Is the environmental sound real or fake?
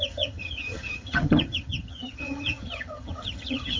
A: fake